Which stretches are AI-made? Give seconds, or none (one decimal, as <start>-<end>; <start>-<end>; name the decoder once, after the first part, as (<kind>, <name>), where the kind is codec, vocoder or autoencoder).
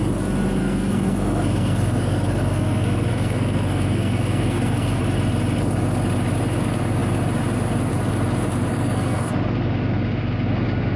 0.6-5.0 (codec, SNAC); 8.7-9.3